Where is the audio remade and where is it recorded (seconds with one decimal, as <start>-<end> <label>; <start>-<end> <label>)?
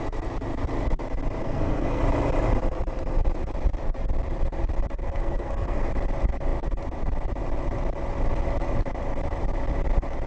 0.0-1.4 recorded; 1.4-2.0 remade; 2.0-5.0 recorded; 5.0-5.9 remade; 5.9-10.3 recorded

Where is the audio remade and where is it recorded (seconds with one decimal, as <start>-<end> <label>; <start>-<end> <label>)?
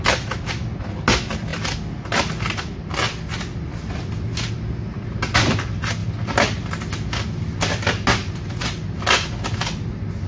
0.0-10.3 recorded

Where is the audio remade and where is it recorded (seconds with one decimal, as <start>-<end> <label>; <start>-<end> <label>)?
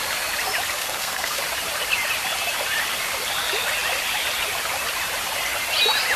0.0-0.8 recorded; 0.8-1.4 remade; 1.4-6.2 recorded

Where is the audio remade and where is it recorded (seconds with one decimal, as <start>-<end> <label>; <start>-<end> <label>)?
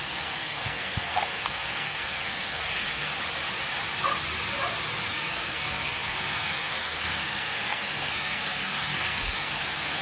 0.0-3.1 remade; 3.1-5.1 recorded; 5.1-10.0 remade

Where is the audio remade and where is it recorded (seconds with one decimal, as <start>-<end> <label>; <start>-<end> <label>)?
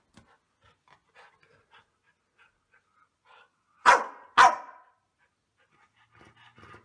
0.0-3.3 recorded; 3.3-4.1 remade; 4.1-6.8 recorded